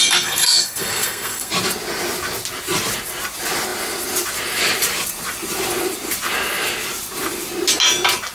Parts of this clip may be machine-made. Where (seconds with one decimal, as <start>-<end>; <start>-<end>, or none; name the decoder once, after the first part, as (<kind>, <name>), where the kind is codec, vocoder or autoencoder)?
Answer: 0.0-1.5 (codec, SNAC)